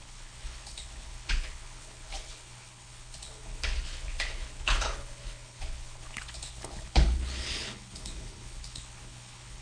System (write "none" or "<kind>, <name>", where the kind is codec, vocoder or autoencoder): codec, HILCodec